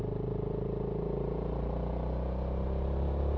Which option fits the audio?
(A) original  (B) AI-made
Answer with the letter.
A